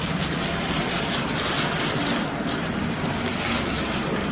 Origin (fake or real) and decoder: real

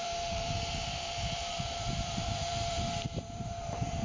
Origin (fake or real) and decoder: fake, vocoder, BigVGAN v2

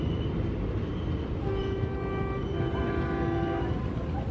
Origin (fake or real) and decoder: real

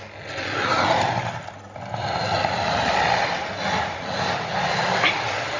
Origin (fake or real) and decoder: real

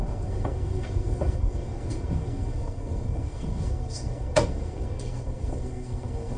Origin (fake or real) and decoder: fake, codec, SNAC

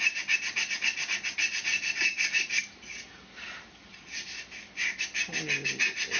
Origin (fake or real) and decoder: real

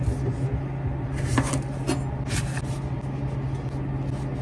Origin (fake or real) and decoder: real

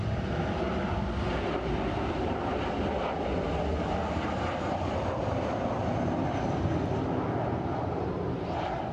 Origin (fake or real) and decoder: real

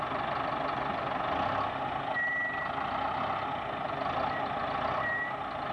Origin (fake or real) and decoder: real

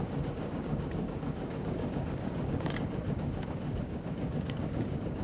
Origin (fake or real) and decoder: fake, codec, DAC